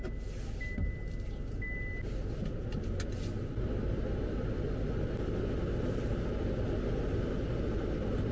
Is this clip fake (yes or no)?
no